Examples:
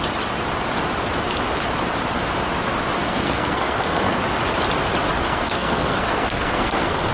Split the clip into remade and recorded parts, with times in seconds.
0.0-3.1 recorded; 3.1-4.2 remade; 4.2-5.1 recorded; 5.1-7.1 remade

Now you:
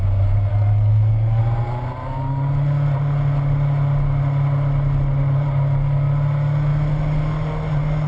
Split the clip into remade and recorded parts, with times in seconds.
0.0-0.5 recorded; 0.5-1.4 remade; 1.4-8.1 recorded

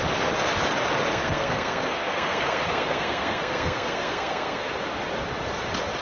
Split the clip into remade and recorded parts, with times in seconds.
0.0-1.1 recorded; 1.1-4.7 remade; 4.7-6.0 recorded

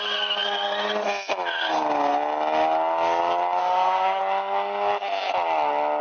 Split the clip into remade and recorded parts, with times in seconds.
0.0-3.6 recorded; 3.6-4.2 remade; 4.2-6.0 recorded

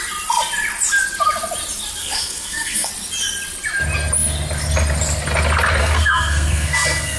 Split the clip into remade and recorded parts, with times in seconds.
0.0-2.0 recorded; 2.0-2.9 remade; 2.9-5.8 recorded; 5.8-7.2 remade